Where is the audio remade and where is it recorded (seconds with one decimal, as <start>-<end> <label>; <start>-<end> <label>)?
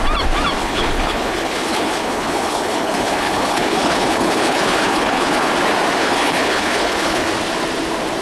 0.0-0.6 recorded; 0.6-5.5 remade; 5.5-6.0 recorded; 6.0-7.3 remade; 7.3-8.2 recorded